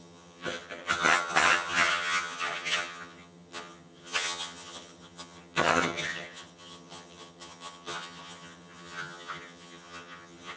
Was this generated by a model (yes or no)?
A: yes